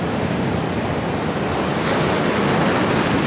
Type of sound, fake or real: real